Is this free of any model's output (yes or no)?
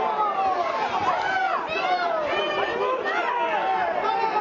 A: yes